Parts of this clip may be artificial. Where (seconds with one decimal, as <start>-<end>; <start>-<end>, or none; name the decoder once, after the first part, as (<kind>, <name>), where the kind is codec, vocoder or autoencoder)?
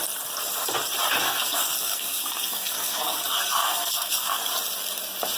1.2-4.4 (codec, SNAC)